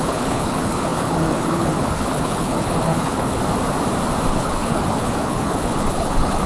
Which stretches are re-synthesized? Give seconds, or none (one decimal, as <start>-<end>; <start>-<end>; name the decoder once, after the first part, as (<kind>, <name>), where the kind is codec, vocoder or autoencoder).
0.0-3.4 (codec, HILCodec); 4.3-6.5